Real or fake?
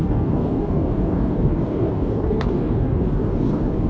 fake